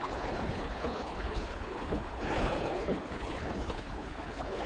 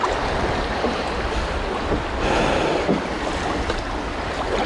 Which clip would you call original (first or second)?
second